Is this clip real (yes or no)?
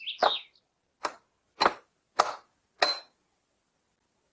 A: yes